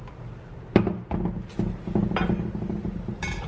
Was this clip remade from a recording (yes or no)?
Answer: no